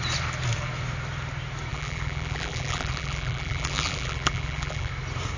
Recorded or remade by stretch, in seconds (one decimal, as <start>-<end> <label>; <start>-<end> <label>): 0.0-1.7 recorded; 1.7-4.9 remade; 4.9-5.4 recorded